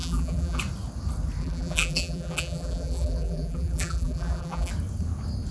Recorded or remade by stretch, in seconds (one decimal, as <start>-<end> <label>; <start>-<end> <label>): 0.0-0.6 remade; 0.6-1.4 recorded; 1.4-4.7 remade; 4.7-5.5 recorded